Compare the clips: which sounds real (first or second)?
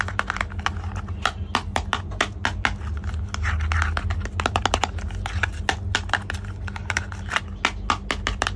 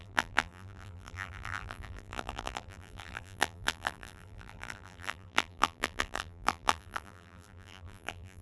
first